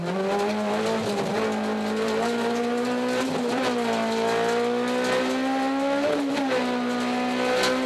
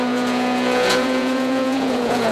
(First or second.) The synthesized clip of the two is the second